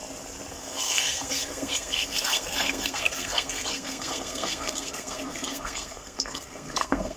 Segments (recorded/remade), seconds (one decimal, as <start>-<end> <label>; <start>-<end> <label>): 0.0-0.5 recorded; 0.5-7.2 remade